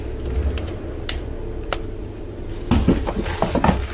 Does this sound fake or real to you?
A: real